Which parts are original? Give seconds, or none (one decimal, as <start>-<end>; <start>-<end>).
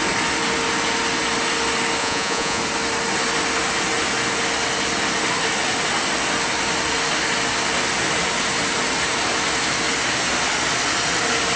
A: 0.0-2.0; 2.6-11.6